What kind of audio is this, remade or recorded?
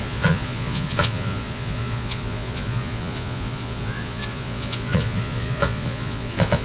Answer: remade